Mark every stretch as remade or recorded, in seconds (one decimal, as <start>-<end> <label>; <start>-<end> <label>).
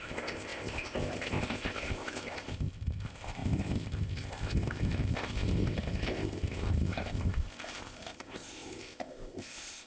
0.0-9.9 remade